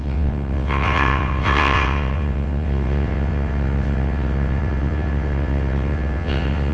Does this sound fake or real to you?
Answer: fake